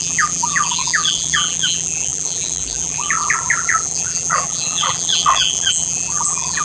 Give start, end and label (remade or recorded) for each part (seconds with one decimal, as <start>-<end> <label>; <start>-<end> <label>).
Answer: 0.0-6.6 remade